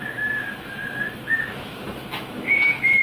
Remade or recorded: remade